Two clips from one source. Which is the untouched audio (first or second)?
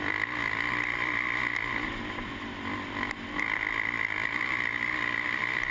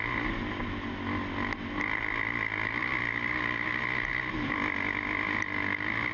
second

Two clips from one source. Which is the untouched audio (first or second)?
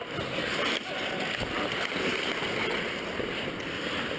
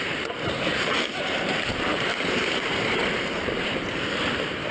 first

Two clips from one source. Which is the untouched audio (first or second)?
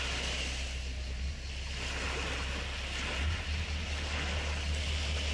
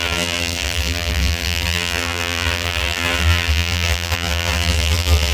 first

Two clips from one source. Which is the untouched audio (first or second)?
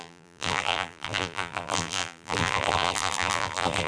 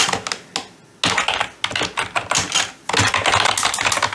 second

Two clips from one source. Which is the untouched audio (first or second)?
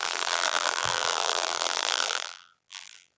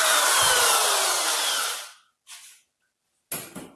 second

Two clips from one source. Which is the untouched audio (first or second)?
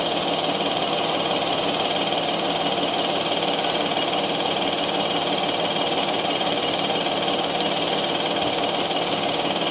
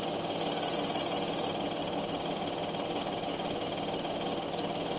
second